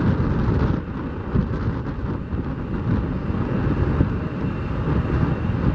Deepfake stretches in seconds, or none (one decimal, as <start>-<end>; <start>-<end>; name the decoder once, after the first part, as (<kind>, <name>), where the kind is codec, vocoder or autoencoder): none